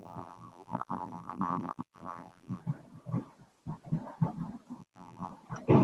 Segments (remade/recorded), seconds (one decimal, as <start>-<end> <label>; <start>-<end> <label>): 0.0-2.6 remade; 2.6-4.8 recorded; 4.8-5.3 remade; 5.3-5.8 recorded